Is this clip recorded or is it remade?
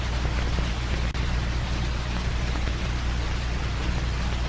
recorded